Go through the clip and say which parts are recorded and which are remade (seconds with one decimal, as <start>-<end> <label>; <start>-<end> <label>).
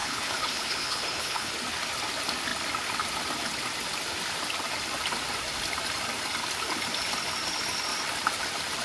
0.0-1.5 remade; 1.5-8.8 recorded